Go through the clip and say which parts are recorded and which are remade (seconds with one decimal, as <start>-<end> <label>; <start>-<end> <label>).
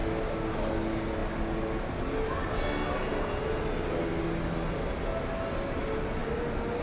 0.0-6.8 recorded